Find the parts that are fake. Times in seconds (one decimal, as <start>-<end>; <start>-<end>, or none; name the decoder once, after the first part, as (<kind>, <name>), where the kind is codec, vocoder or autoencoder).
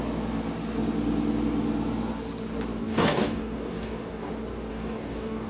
2.8-4.3 (codec, DAC); 4.7-5.5